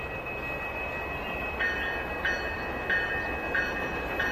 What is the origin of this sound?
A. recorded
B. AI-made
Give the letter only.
A